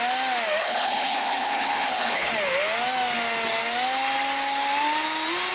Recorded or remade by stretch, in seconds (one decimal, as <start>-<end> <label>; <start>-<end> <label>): 0.0-0.6 recorded; 0.6-2.3 remade; 2.3-5.5 recorded